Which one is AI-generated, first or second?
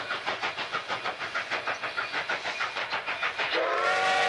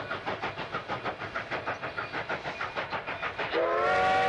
first